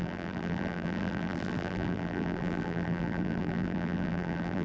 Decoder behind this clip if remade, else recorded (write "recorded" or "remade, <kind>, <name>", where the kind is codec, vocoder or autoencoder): remade, vocoder, BigVGAN v2